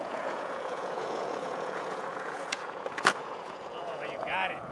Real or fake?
fake